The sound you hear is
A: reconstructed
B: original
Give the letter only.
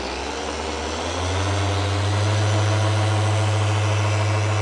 B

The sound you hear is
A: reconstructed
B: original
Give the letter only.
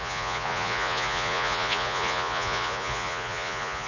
A